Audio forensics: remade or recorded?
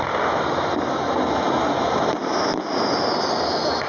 recorded